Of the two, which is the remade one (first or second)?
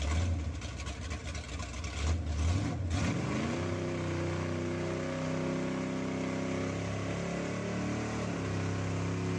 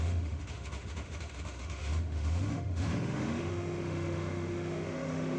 second